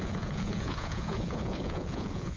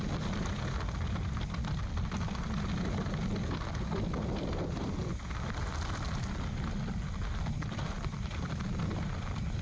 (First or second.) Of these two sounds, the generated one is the first